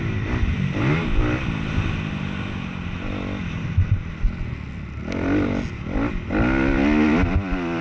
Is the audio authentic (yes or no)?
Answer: yes